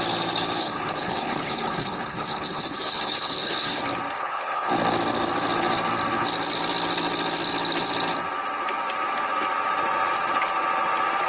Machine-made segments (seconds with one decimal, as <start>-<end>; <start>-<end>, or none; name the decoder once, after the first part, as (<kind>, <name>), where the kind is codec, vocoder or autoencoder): 0.6-3.8 (codec, HILCodec); 4.2-4.7